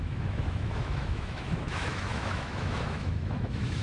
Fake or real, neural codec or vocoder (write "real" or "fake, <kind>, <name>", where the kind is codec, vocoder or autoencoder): fake, autoencoder, DAC-VAE